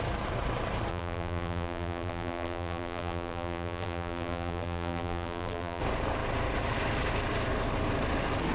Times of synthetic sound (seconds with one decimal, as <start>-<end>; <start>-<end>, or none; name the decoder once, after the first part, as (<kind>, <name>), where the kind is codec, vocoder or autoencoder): 0.9-5.8 (vocoder, BigVGAN v2)